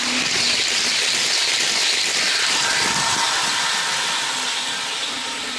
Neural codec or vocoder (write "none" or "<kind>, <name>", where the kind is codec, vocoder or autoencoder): none